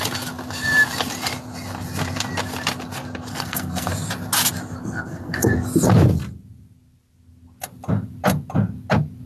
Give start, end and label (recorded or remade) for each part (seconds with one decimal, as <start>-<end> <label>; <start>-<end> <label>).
0.0-3.3 recorded; 3.3-3.9 remade; 3.9-4.8 recorded; 4.8-5.5 remade; 5.5-9.3 recorded